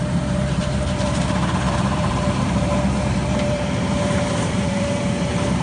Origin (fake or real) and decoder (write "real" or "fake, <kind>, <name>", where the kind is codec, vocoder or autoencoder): fake, vocoder, BigVGAN v2